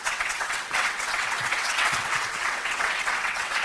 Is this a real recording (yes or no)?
no